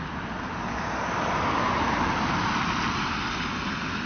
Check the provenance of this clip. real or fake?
real